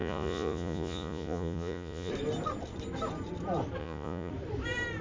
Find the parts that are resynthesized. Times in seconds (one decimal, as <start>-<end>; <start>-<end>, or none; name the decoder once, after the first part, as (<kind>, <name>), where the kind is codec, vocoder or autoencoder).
0.0-2.1 (vocoder, Vocos); 3.8-4.3